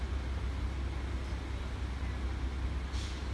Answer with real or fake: real